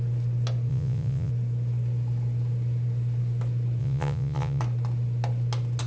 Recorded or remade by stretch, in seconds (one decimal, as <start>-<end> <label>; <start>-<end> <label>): 0.0-0.7 recorded; 0.7-1.3 remade; 1.3-3.8 recorded; 3.8-4.6 remade; 4.6-5.9 recorded